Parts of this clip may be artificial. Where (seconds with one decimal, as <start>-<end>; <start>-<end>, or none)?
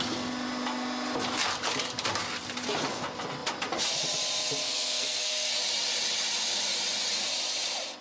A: 4.6-5.5